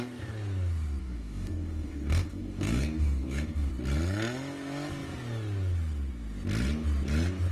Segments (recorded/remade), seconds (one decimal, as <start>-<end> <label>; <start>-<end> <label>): 0.0-1.0 recorded; 1.0-3.7 remade; 3.7-7.5 recorded